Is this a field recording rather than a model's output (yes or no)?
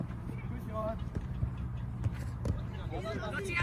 no